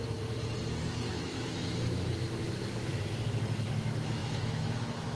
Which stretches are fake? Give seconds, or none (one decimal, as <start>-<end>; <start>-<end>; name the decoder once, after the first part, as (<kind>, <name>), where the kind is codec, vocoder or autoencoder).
1.1-3.0 (autoencoder, DAC-VAE); 3.7-5.2